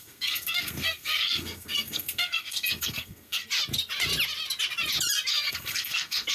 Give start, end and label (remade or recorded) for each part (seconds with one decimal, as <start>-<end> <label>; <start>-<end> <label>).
0.0-3.4 remade; 3.4-5.3 recorded; 5.3-6.3 remade